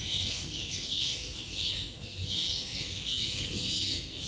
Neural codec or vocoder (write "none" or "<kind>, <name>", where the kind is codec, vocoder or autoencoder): codec, SNAC